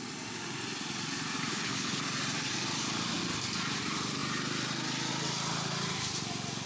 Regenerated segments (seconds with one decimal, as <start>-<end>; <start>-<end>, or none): 1.5-2.0